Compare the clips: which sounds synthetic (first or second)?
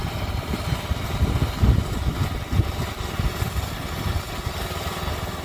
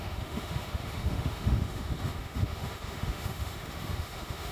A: second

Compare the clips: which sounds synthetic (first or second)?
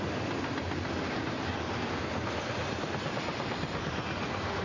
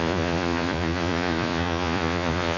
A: second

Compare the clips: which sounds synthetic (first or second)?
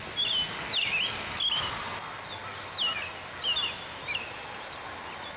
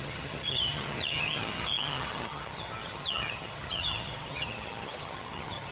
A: second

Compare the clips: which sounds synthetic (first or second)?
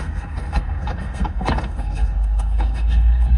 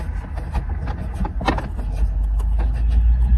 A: first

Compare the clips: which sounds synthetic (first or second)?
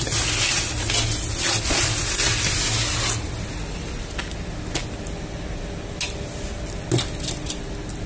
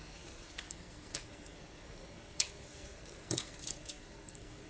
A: second